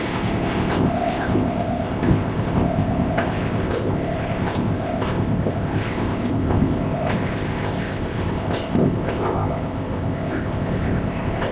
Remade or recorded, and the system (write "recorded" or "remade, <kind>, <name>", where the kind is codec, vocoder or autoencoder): remade, codec, ZipCodec